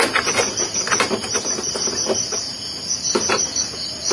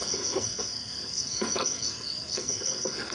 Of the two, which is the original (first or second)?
first